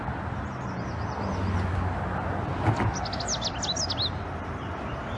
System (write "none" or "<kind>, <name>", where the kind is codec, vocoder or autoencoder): none